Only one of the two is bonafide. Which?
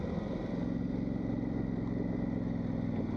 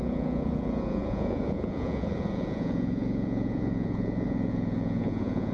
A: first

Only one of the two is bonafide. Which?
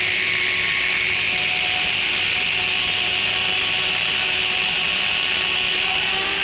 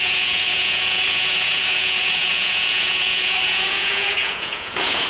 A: first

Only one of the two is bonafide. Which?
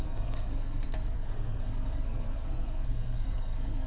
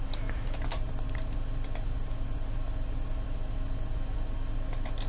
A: second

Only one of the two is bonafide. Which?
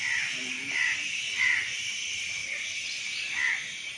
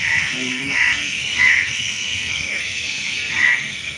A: first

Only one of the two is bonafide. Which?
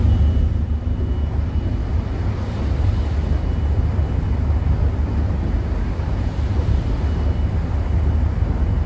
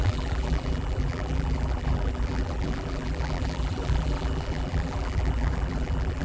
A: first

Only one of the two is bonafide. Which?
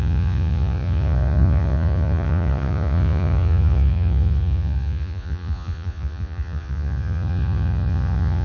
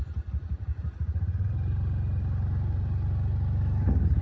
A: second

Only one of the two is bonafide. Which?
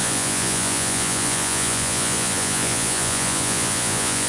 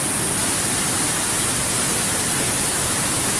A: second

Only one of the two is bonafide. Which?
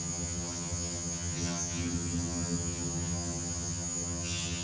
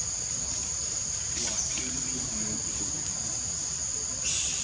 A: second